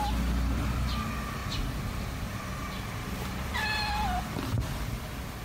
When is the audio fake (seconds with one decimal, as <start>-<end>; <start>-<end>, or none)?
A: none